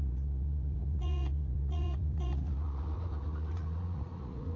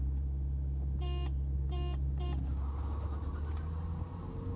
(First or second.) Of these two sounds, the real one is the second